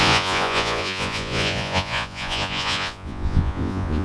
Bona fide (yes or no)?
no